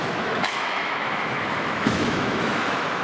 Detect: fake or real fake